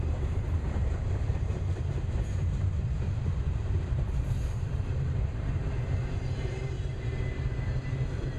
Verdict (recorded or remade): remade